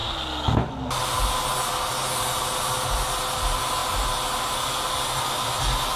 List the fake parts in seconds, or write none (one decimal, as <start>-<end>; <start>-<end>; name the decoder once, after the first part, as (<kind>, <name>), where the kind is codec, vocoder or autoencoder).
none